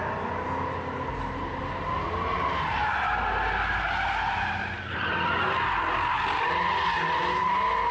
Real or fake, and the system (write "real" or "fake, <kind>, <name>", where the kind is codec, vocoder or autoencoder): real